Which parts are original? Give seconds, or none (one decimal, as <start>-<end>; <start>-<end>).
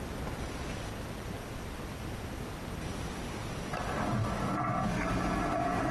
0.0-5.9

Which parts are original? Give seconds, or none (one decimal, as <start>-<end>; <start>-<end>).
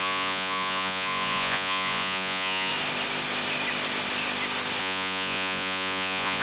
2.7-4.8